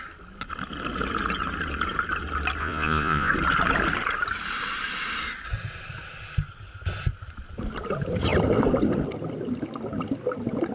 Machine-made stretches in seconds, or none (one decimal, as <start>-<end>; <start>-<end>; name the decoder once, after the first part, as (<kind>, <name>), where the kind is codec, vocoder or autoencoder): 2.6-3.3 (vocoder, Vocos)